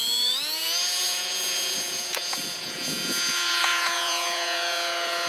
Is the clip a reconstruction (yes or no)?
yes